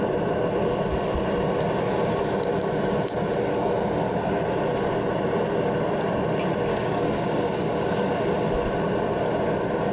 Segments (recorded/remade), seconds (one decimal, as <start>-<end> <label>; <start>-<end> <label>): 0.0-6.7 recorded; 6.7-8.2 remade; 8.2-9.9 recorded